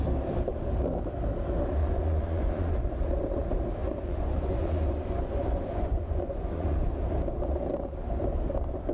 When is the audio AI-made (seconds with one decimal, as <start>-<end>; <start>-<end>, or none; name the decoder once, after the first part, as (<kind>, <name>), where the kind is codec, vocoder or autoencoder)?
1.8-2.8 (vocoder, Vocos); 3.8-6.9